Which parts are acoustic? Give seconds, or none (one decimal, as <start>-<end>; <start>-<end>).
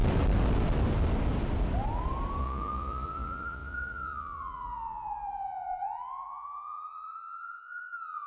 0.0-2.4